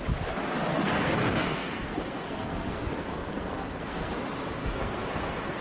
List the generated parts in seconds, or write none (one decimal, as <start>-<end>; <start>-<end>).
0.7-4.1; 4.6-5.6